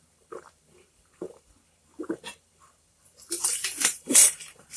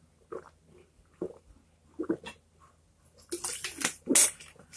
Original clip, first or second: second